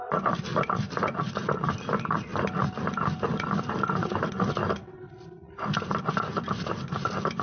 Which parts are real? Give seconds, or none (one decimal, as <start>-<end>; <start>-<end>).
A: 0.0-0.5; 1.3-2.3; 5.1-7.4